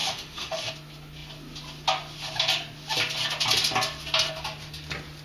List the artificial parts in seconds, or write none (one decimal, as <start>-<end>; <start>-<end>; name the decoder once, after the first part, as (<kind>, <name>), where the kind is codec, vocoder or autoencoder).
0.0-0.7 (autoencoder, DAC-VAE)